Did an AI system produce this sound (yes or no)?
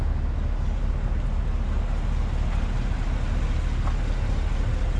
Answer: no